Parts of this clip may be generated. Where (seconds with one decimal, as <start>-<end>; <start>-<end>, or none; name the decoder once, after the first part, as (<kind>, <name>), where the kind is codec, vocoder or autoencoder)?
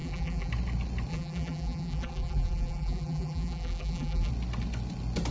0.0-0.5 (vocoder, BigVGAN v2); 1.1-4.3